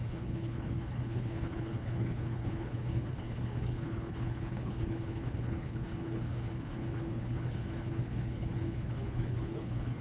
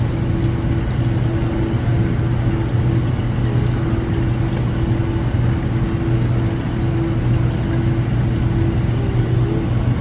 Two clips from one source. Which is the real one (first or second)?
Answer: second